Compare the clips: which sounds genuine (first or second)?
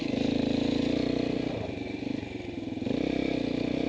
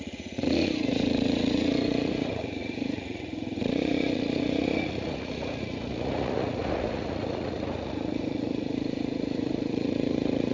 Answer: first